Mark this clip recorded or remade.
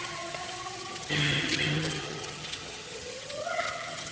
remade